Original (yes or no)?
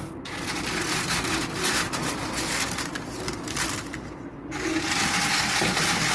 yes